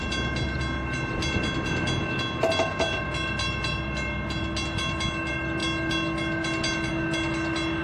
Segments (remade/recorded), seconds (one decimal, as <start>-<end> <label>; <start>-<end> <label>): 0.0-7.8 recorded